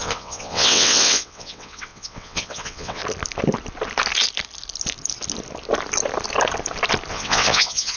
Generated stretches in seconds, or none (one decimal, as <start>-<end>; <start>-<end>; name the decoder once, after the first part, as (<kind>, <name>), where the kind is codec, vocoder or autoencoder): 0.0-3.0 (vocoder, WaveNeXt); 7.1-8.0